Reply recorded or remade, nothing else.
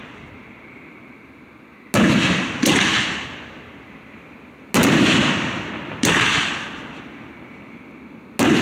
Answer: recorded